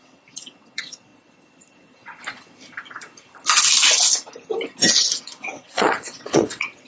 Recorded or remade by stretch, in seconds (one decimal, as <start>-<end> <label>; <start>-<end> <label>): 0.0-1.1 remade; 1.1-5.2 recorded; 5.2-6.9 remade